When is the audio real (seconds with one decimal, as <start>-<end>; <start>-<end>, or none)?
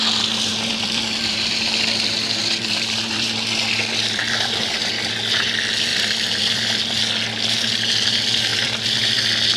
0.0-0.5; 4.6-5.9; 7.0-8.5; 9.2-9.6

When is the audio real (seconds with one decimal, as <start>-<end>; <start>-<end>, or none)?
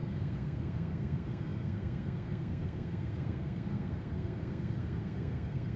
none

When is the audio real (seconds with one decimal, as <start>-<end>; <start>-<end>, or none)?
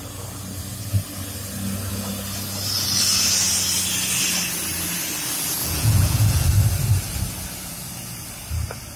0.0-5.6; 6.5-9.0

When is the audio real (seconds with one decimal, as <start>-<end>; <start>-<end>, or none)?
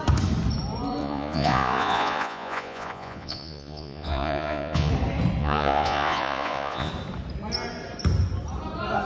0.0-1.0; 4.9-5.4; 6.9-9.1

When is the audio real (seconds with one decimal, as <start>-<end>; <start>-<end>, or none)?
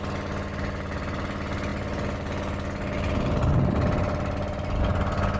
0.0-5.4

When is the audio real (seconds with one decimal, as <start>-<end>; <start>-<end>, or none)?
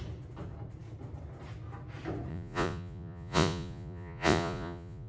0.0-2.3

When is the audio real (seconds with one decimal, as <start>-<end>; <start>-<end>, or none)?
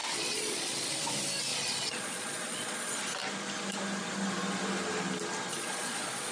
0.9-1.5; 3.0-5.5